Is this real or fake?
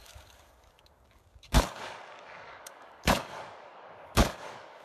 fake